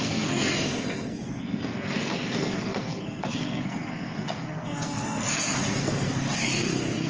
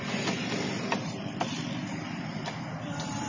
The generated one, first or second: first